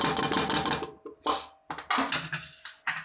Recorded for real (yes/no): yes